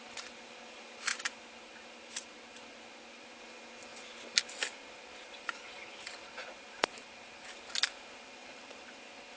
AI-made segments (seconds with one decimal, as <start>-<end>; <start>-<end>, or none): none